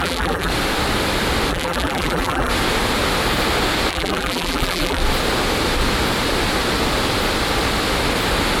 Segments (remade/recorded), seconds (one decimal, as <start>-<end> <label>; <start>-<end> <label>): 0.0-0.5 remade; 0.5-1.5 recorded; 1.5-2.5 remade; 2.5-3.9 recorded; 3.9-5.0 remade; 5.0-8.6 recorded